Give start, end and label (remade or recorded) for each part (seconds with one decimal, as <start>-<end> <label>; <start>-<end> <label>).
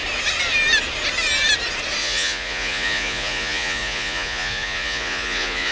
0.0-2.0 recorded; 2.0-5.7 remade